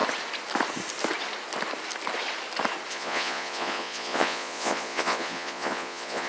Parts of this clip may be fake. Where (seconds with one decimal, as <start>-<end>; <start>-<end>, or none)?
2.9-6.3